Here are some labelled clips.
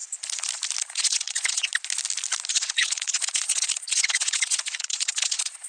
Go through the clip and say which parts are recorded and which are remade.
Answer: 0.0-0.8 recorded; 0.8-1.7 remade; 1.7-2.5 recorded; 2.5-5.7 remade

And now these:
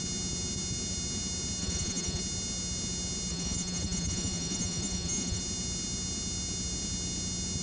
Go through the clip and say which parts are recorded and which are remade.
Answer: 0.0-1.6 recorded; 1.6-2.2 remade; 2.2-3.3 recorded; 3.3-5.4 remade; 5.4-7.6 recorded

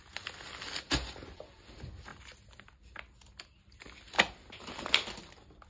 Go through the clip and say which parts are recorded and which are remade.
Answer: 0.0-5.7 recorded

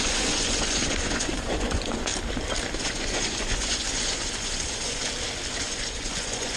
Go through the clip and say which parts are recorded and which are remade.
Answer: 0.0-2.1 remade; 2.1-2.8 recorded; 2.8-5.0 remade; 5.0-5.6 recorded; 5.6-6.6 remade

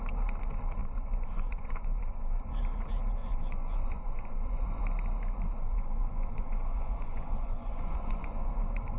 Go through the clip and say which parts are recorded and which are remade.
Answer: 0.0-0.8 recorded; 0.8-2.5 remade; 2.5-3.2 recorded; 3.2-4.8 remade; 4.8-5.5 recorded; 5.5-8.5 remade; 8.5-9.0 recorded

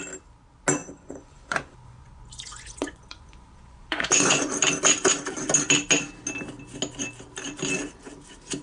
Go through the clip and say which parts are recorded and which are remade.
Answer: 0.0-0.8 recorded; 0.8-4.5 remade; 4.5-8.6 recorded

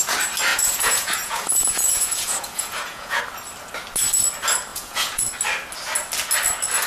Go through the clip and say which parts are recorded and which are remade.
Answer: 0.0-0.5 recorded; 0.5-3.2 remade; 3.2-4.7 recorded; 4.7-5.2 remade; 5.2-6.9 recorded